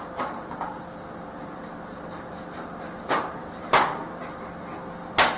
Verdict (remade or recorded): recorded